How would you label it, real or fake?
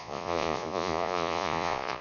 fake